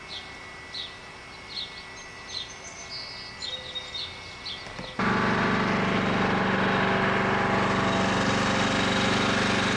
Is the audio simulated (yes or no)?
no